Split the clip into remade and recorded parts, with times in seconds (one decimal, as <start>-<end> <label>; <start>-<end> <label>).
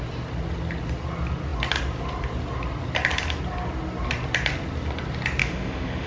0.0-5.4 recorded; 5.4-6.1 remade